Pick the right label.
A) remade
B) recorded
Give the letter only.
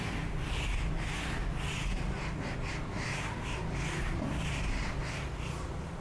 B